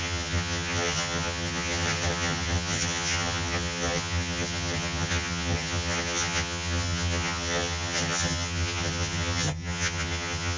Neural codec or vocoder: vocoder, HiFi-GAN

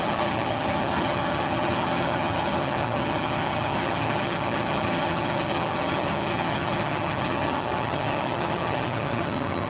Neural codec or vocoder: vocoder, HiFi-GAN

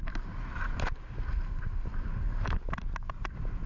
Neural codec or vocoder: none